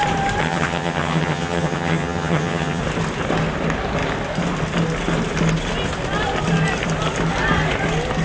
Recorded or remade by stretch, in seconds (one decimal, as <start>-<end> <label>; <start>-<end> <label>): 0.0-0.4 recorded; 0.4-2.8 remade; 2.8-8.2 recorded